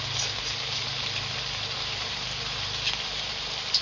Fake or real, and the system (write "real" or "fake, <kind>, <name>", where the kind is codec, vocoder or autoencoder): real